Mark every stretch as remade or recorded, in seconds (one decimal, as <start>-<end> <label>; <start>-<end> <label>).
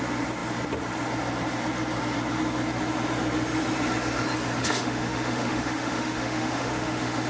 0.0-4.6 recorded; 4.6-7.3 remade